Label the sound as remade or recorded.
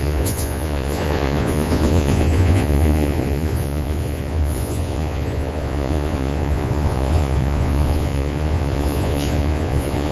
remade